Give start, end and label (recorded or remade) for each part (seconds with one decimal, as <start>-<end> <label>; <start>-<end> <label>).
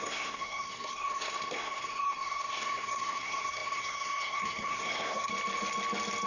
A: 0.0-5.3 remade; 5.3-6.3 recorded